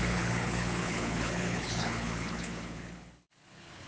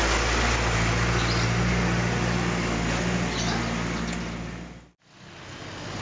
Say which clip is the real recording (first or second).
second